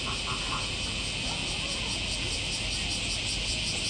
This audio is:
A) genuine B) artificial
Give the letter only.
A